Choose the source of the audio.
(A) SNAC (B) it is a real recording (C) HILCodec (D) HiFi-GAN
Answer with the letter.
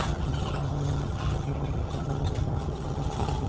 D